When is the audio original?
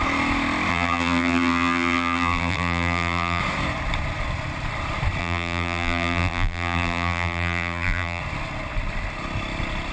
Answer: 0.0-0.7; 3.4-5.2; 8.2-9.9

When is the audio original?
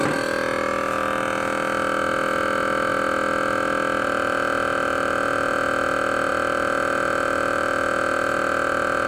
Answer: 0.0-9.1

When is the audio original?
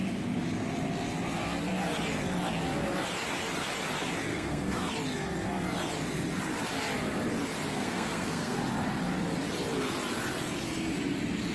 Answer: 0.0-4.3; 4.9-7.7; 8.6-11.5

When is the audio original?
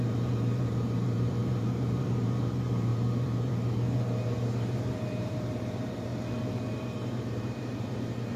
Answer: 6.1-6.7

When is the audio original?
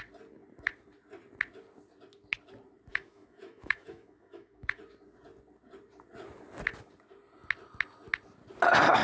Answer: 0.0-2.9; 4.8-9.0